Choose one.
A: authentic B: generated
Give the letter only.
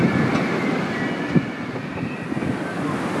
A